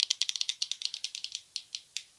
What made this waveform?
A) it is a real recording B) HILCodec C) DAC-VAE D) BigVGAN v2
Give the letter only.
A